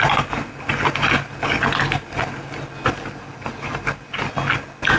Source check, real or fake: real